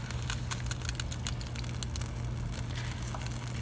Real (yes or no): yes